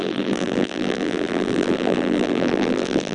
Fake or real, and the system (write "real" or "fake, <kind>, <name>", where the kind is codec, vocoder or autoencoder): fake, vocoder, BigVGAN v2